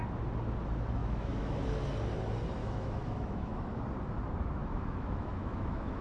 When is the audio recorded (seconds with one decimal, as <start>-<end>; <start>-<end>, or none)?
0.0-1.0; 1.6-2.6; 3.8-4.6